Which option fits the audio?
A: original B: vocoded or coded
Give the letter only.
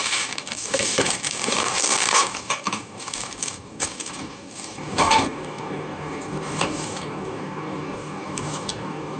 B